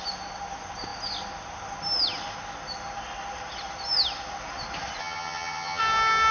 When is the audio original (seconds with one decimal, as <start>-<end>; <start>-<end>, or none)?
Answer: 0.0-5.0; 5.8-6.3